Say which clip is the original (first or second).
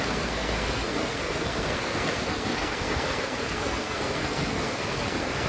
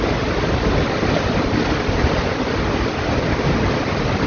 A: second